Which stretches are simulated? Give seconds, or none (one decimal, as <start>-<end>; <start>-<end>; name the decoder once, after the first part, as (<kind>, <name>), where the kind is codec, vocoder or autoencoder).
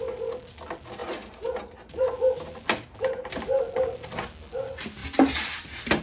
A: none